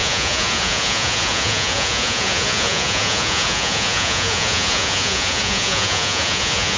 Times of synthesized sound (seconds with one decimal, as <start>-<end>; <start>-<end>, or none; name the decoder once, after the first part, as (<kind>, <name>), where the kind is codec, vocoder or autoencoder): 0.0-6.8 (vocoder, Vocos)